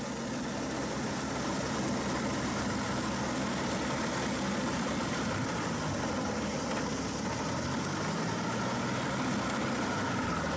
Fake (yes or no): no